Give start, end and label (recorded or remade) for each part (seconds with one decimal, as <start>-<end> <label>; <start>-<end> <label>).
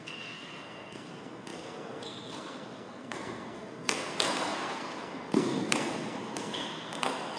0.0-7.4 remade